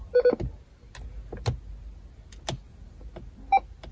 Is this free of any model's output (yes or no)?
yes